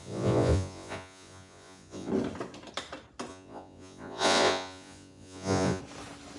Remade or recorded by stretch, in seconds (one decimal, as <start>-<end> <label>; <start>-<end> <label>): 0.0-2.1 remade; 2.1-3.3 recorded; 3.3-5.8 remade; 5.8-6.4 recorded